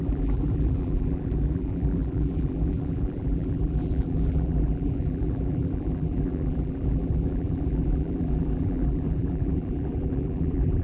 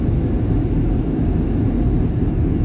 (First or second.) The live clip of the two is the second